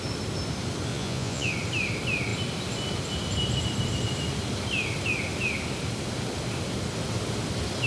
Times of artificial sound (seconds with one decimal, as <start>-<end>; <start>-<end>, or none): 0.9-1.5